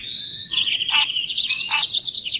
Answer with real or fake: fake